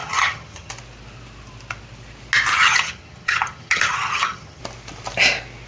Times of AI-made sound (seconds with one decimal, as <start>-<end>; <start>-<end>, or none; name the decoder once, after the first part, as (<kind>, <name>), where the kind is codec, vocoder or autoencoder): 0.0-0.7 (vocoder, HiFi-GAN); 2.5-4.6